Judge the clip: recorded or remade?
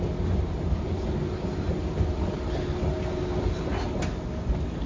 recorded